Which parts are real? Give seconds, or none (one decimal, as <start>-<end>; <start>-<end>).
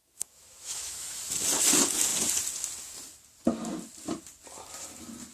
1.2-5.3